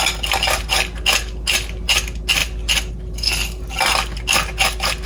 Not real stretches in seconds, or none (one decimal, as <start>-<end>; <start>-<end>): none